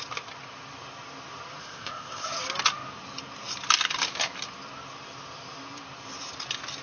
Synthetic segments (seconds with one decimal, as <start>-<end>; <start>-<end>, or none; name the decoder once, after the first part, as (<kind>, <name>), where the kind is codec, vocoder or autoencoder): 1.6-2.3 (codec, ZipCodec)